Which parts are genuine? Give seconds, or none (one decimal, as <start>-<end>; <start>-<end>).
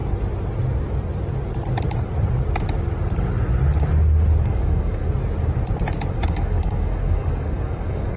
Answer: 0.0-4.4; 5.0-6.1